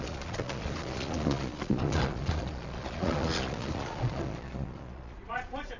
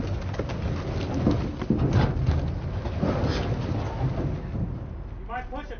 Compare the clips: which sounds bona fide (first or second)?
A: second